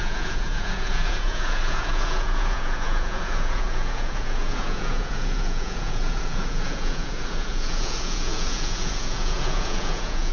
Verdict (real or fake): fake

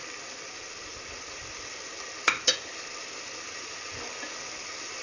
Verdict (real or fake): real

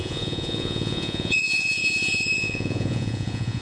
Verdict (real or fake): fake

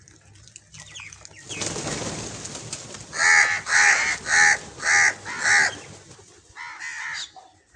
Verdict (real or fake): real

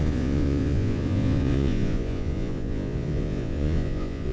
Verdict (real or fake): fake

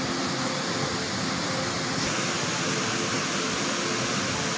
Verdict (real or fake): real